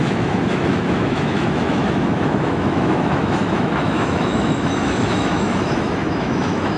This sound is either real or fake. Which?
fake